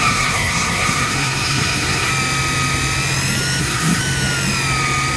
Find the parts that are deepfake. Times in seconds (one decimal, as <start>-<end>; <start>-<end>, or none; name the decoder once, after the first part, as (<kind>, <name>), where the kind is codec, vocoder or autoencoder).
0.0-2.1 (codec, SNAC); 3.6-4.0